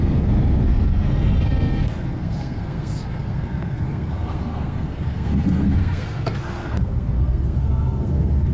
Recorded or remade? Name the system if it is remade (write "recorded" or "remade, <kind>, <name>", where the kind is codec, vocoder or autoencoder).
remade, codec, SNAC